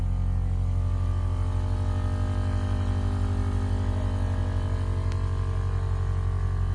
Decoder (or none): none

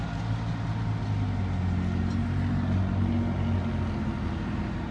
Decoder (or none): none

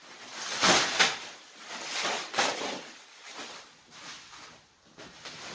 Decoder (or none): none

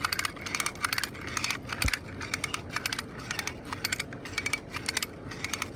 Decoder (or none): none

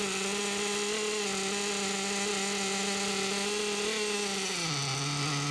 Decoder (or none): none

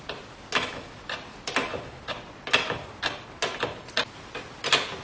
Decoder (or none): none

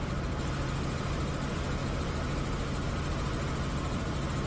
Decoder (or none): none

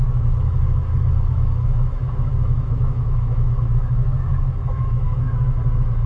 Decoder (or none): autoencoder, DAC-VAE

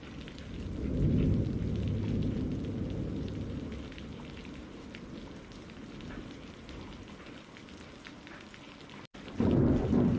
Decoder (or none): none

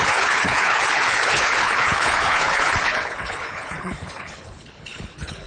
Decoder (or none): codec, HILCodec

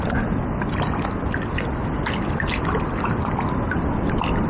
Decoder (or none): none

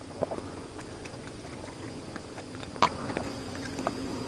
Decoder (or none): vocoder, Vocos